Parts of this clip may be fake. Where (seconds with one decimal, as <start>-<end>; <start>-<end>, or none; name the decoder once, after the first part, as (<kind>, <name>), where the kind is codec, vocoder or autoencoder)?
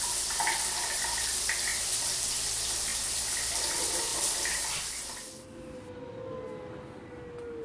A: 1.7-2.2 (vocoder, BigVGAN v2); 2.9-3.5